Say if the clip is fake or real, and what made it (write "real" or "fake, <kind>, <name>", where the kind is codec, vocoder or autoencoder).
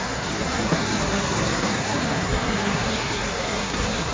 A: fake, codec, SNAC